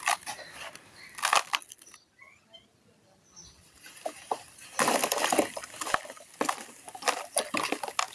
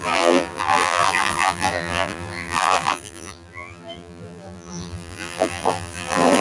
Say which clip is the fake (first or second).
second